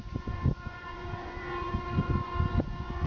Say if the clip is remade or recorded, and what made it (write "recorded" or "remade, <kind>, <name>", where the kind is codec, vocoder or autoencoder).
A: remade, vocoder, Vocos